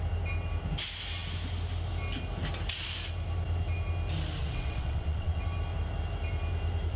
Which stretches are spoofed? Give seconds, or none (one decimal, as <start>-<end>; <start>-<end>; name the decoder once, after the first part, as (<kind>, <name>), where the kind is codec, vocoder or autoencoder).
4.4-5.4 (vocoder, WaveNeXt)